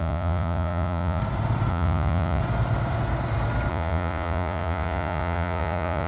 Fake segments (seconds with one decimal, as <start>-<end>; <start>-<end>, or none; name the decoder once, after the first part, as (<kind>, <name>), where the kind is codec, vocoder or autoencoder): 0.0-1.2 (vocoder, Vocos); 1.7-2.4; 3.7-6.1